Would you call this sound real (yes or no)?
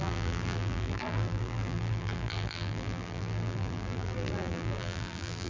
no